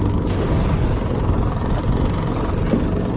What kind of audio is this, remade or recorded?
recorded